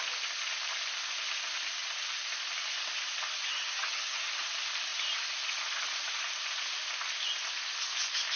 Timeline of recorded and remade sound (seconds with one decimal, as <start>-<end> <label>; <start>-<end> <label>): 0.0-3.5 recorded; 3.5-4.3 remade; 4.3-8.4 recorded